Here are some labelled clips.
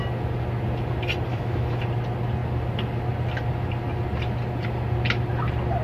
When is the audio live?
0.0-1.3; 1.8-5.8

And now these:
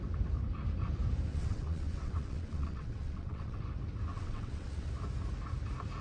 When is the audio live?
0.0-1.3; 3.6-4.1; 4.9-6.0

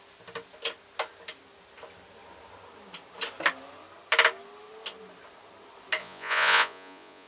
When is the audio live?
0.0-6.0

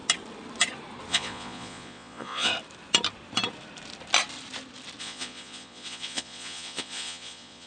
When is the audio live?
0.0-1.1; 2.5-5.0